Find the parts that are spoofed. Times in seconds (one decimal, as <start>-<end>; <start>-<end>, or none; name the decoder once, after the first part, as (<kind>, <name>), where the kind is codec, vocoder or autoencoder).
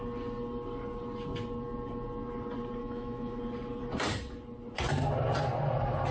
2.8-3.4 (autoencoder, DAC-VAE)